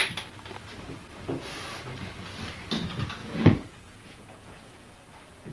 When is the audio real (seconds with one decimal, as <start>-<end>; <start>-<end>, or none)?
0.0-3.2; 4.9-5.5

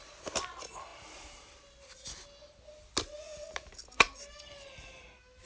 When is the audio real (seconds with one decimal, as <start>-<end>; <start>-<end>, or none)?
0.0-5.5

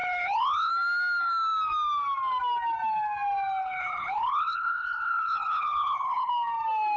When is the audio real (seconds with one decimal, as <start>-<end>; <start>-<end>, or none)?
0.7-3.6; 6.3-7.0

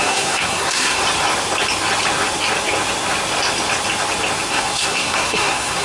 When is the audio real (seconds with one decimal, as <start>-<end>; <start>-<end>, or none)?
1.0-4.5